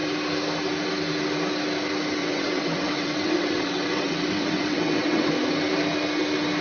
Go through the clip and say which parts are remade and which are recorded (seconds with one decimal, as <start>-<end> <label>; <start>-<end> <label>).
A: 0.0-2.2 recorded; 2.2-5.3 remade; 5.3-6.6 recorded